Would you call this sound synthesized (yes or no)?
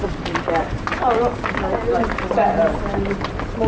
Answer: no